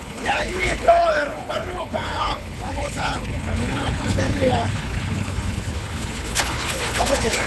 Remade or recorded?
remade